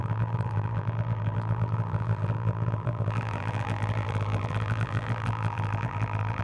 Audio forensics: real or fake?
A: fake